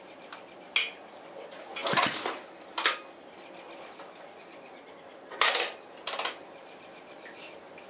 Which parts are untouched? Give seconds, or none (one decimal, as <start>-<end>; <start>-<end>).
0.0-1.8; 2.4-7.9

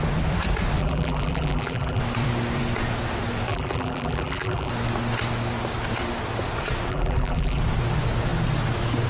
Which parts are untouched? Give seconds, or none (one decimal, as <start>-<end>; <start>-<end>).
0.0-0.8; 2.0-3.5; 4.7-6.9; 7.6-9.1